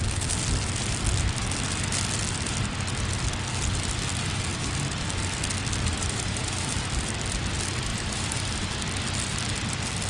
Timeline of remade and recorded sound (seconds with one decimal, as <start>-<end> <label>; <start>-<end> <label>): 0.0-5.9 recorded; 5.9-6.8 remade; 6.8-7.9 recorded; 7.9-8.7 remade; 8.7-10.1 recorded